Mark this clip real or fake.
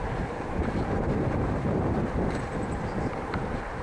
fake